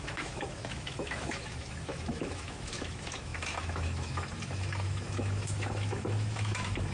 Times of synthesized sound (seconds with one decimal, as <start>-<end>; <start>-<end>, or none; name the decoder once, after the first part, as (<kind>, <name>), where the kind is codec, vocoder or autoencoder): 0.0-6.9 (autoencoder, DAC-VAE)